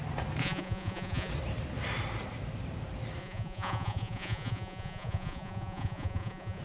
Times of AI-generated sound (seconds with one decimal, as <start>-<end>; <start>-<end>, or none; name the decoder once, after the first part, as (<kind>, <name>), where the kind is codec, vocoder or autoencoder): 0.4-1.3 (vocoder, Vocos); 3.2-6.6